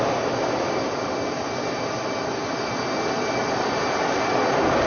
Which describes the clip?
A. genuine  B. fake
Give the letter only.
A